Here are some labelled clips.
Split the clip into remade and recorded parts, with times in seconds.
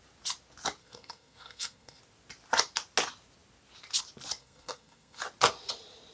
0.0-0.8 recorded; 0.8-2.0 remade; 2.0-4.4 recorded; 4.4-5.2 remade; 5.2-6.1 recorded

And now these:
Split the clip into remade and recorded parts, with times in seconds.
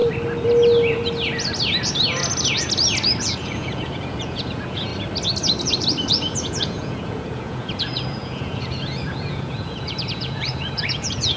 0.0-3.2 recorded; 3.2-4.9 remade; 4.9-6.1 recorded; 6.1-11.4 remade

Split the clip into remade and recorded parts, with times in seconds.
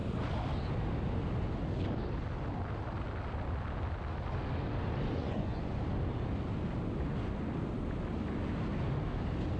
0.0-5.2 recorded; 5.2-5.8 remade; 5.8-9.6 recorded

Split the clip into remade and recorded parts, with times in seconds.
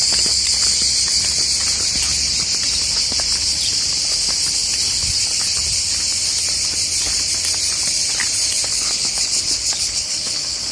0.0-8.7 recorded; 8.7-10.7 remade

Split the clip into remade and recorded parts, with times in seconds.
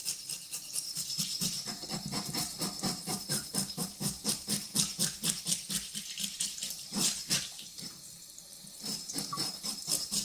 0.0-4.7 remade; 4.7-6.4 recorded; 6.4-10.2 remade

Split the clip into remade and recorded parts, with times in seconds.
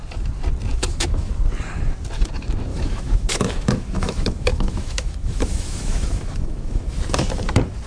0.0-0.7 recorded; 0.7-1.3 remade; 1.3-2.7 recorded; 2.7-7.0 remade; 7.0-7.9 recorded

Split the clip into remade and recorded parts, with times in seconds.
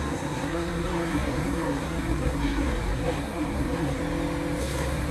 0.0-4.0 remade; 4.0-4.6 recorded; 4.6-5.1 remade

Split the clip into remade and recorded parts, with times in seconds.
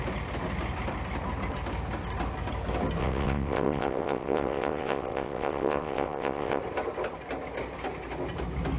0.0-3.0 recorded; 3.0-6.6 remade; 6.6-8.8 recorded